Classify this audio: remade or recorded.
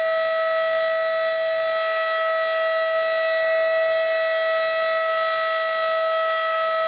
recorded